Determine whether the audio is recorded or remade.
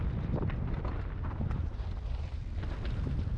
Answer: recorded